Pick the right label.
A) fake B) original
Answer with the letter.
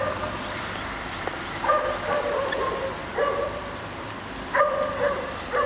A